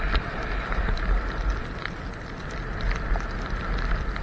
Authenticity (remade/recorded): recorded